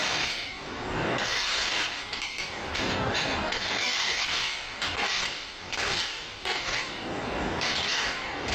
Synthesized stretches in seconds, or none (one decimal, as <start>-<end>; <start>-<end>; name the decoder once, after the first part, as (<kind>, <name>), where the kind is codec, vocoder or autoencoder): 0.0-8.5 (codec, DAC)

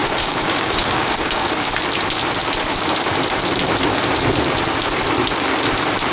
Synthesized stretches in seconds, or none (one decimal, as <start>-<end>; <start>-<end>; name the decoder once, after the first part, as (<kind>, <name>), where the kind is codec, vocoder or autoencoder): 0.0-1.5 (codec, DAC)

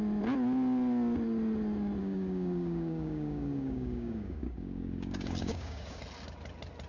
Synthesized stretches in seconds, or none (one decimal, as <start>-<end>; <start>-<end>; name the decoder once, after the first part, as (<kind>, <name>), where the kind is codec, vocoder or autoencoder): 2.0-6.0 (codec, DAC)

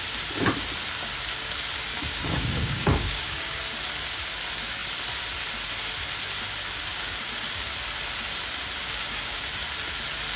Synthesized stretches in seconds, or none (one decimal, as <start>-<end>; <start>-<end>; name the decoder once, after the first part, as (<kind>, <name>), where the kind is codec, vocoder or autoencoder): 2.0-3.6 (codec, DAC); 6.9-7.7; 8.8-9.4